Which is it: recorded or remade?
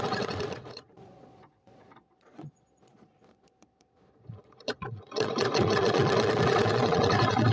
remade